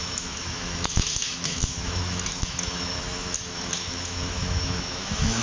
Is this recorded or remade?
remade